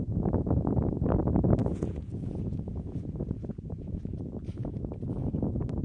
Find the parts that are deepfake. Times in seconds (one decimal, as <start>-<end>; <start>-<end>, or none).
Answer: 1.6-4.0